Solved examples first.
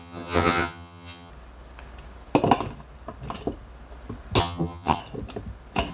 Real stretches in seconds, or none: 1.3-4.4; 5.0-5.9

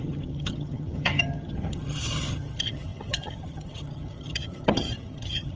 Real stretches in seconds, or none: none

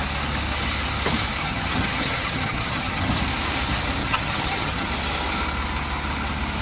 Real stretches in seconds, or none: 0.0-1.4; 3.1-4.0; 4.9-6.6

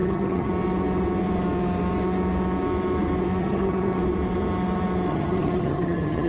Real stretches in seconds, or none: 0.5-3.4; 4.0-5.1

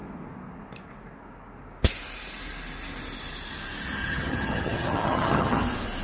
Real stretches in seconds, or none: 0.0-4.0; 5.6-6.0